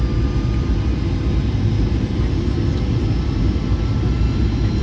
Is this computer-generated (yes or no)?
no